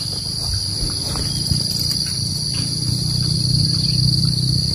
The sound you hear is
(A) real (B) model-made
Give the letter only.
A